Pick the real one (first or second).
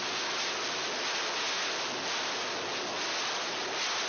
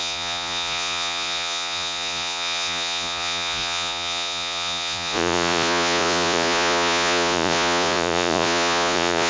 first